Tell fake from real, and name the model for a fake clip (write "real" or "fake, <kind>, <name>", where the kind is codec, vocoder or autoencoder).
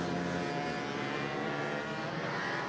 real